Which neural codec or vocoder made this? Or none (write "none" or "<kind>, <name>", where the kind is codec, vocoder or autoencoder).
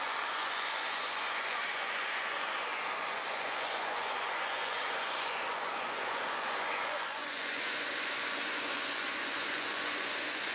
vocoder, Vocos